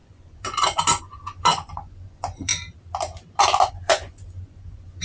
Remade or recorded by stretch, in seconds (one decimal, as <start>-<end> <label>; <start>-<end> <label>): 0.0-2.5 remade; 2.5-3.7 recorded; 3.7-5.0 remade